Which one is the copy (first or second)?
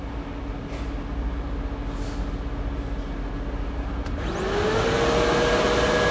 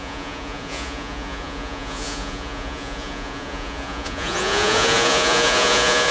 second